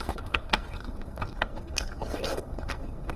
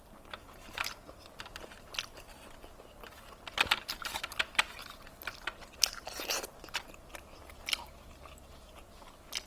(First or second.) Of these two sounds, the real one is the second